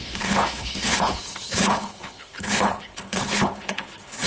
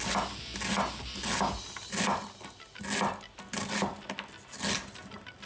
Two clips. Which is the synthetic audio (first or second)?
first